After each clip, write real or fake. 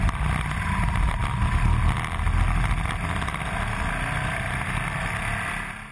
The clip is real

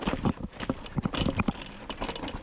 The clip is real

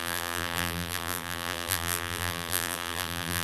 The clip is fake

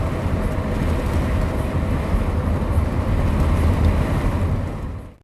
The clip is real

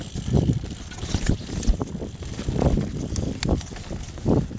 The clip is real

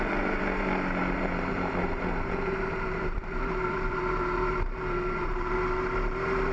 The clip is fake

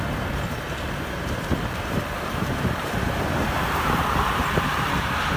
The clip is fake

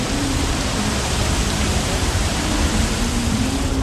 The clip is fake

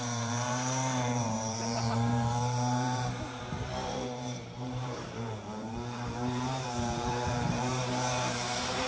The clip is fake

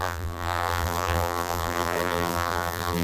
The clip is fake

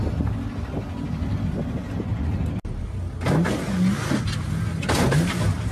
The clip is real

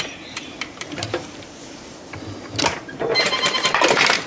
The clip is fake